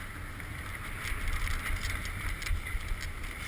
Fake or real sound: real